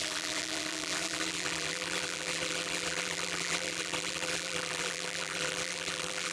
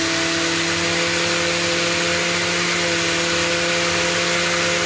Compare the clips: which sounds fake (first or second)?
first